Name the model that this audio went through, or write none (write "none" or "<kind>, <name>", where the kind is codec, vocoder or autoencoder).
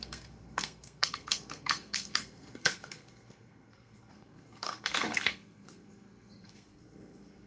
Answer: codec, SNAC